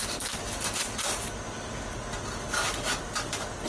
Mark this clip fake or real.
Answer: real